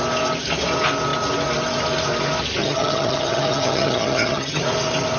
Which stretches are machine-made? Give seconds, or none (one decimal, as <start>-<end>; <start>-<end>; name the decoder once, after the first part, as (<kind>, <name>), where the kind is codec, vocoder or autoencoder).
2.6-4.6 (vocoder, HiFi-GAN)